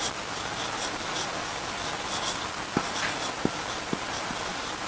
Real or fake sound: real